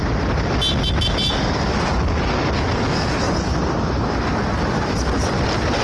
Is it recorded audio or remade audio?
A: recorded